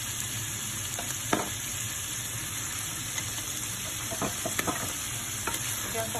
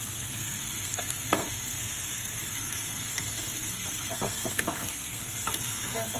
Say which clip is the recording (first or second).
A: first